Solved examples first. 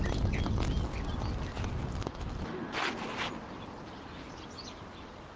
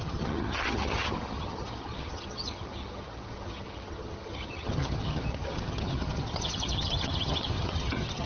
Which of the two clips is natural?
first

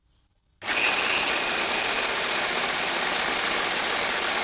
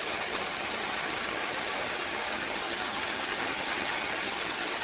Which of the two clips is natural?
first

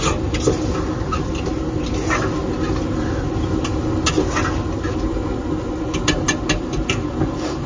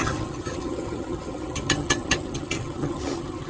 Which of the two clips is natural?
first